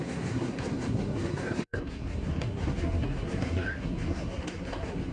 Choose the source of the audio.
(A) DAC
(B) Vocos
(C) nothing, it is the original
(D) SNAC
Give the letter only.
D